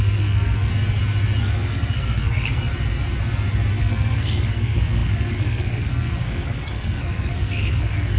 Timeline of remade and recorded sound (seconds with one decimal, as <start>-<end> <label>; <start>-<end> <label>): 0.0-0.7 remade; 0.7-1.4 recorded; 1.4-2.7 remade; 2.7-3.8 recorded; 3.8-8.2 remade